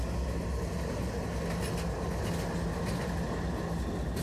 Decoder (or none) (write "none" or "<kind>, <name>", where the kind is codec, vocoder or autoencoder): none